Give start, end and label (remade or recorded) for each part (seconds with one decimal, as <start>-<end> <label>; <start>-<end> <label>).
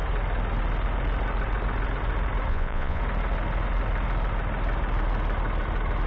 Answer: 0.0-2.5 recorded; 2.5-3.0 remade; 3.0-6.1 recorded